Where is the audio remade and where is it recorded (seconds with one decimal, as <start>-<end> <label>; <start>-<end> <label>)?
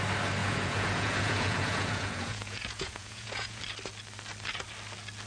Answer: 0.0-0.4 recorded; 0.4-3.6 remade; 3.6-5.3 recorded